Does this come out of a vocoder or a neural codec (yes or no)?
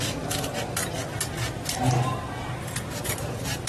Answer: no